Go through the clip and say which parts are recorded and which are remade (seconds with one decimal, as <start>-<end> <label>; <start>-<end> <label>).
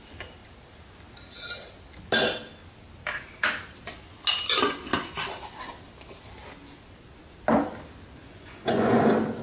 0.0-8.2 recorded; 8.2-9.0 remade; 9.0-9.4 recorded